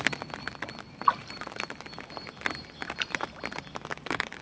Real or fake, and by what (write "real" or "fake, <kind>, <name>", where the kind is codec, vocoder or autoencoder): real